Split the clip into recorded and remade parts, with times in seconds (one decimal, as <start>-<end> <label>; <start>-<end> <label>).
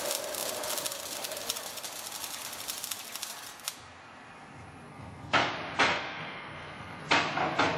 0.0-4.9 recorded; 4.9-5.5 remade; 5.5-5.9 recorded; 5.9-7.0 remade; 7.0-7.8 recorded